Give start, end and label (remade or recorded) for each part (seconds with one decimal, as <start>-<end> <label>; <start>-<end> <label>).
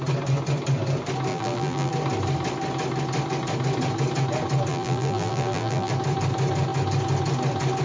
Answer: 0.0-1.3 recorded; 1.3-1.9 remade; 1.9-4.7 recorded; 4.7-5.9 remade; 5.9-7.8 recorded